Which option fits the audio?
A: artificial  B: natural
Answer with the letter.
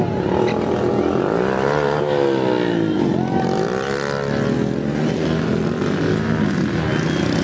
B